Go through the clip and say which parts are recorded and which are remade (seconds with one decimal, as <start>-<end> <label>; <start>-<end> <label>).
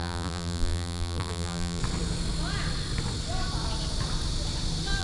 0.0-1.8 remade; 1.8-5.0 recorded